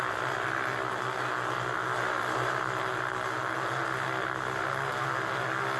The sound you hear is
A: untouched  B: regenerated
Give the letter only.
A